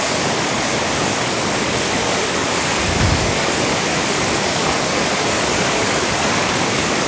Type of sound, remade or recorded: remade